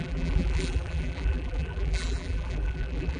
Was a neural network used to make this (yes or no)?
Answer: yes